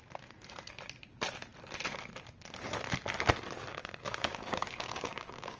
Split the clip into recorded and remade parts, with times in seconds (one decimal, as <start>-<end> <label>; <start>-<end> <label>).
0.0-3.7 recorded; 3.7-5.6 remade